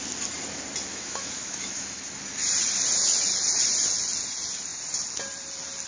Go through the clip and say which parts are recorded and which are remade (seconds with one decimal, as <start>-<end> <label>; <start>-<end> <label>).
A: 0.0-0.9 recorded; 0.9-2.0 remade; 2.0-5.9 recorded